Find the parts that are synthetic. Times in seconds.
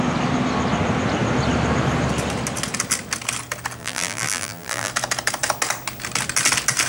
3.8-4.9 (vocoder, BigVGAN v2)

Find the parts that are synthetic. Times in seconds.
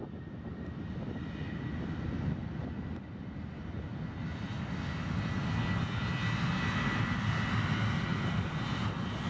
8.1-8.9 (vocoder, BigVGAN v2)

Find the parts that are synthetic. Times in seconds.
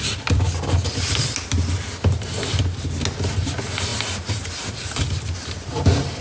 none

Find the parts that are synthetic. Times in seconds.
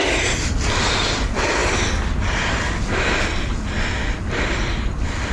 none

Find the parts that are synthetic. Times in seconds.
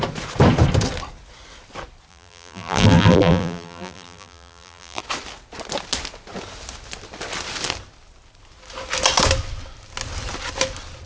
2.1-5.0 (vocoder, BigVGAN v2)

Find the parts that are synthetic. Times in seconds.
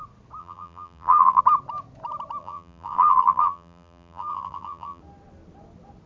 0.4-1.4 (vocoder, BigVGAN v2); 2.4-5.0